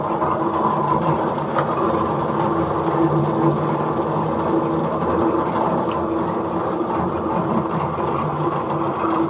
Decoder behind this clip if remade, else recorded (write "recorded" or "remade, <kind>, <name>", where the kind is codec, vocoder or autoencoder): recorded